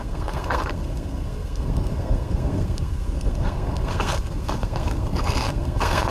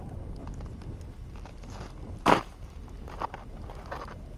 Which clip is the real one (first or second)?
second